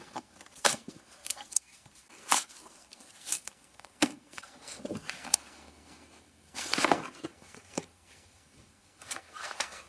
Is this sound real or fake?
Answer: fake